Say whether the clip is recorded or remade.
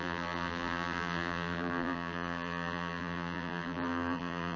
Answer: remade